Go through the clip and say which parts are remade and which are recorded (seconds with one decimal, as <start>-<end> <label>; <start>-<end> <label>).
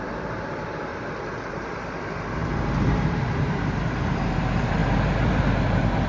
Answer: 0.0-0.9 remade; 0.9-1.5 recorded; 1.5-4.8 remade; 4.8-5.5 recorded; 5.5-6.1 remade